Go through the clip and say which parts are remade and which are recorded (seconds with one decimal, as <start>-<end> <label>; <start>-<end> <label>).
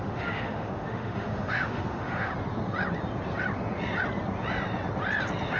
0.0-2.3 remade; 2.3-5.6 recorded